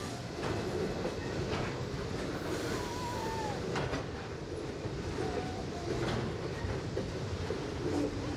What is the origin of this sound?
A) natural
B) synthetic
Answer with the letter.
A